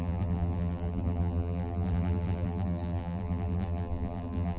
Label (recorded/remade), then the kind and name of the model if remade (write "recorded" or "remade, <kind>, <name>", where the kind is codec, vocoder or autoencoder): remade, vocoder, BigVGAN v2